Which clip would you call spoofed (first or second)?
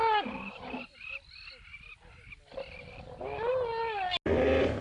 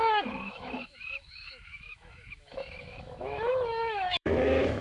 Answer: second